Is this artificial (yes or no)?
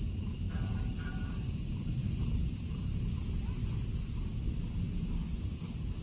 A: no